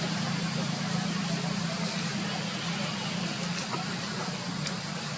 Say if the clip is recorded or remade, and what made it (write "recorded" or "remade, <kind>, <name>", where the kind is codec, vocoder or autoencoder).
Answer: recorded